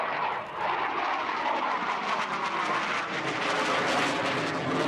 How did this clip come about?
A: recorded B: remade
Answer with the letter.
A